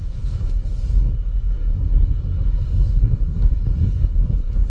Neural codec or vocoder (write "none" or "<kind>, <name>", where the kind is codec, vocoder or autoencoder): codec, SNAC